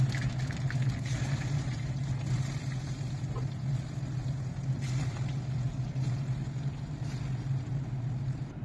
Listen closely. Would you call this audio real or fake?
real